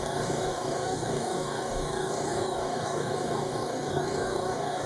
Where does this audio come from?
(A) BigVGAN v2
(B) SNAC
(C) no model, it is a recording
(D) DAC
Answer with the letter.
D